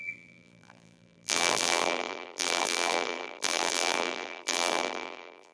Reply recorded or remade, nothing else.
remade